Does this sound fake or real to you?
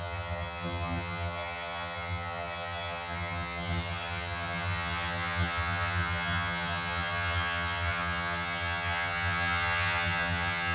fake